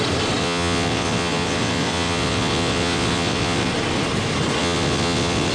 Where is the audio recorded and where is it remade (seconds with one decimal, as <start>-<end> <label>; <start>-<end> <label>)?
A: 0.0-0.4 recorded; 0.4-3.7 remade; 3.7-4.6 recorded; 4.6-5.5 remade